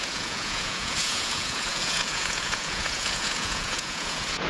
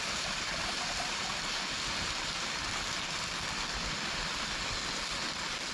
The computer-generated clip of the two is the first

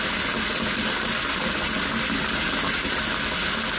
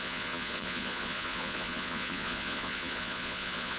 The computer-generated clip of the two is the second